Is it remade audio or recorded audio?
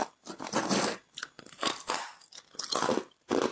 recorded